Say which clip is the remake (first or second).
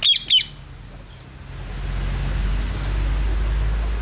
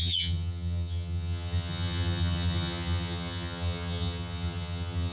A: second